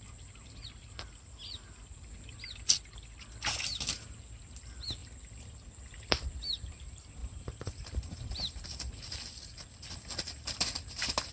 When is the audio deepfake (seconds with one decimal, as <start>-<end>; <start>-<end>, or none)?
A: 7.2-8.6